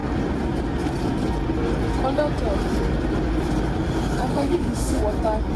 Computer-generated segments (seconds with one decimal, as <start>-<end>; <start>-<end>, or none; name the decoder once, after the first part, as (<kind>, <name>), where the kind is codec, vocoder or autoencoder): 4.3-5.0 (autoencoder, DAC-VAE)